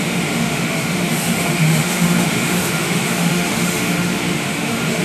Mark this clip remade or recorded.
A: remade